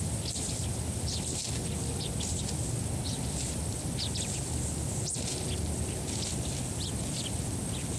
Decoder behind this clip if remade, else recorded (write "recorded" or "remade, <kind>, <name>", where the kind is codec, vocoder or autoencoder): recorded